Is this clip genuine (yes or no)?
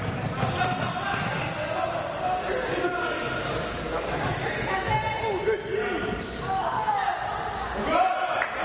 yes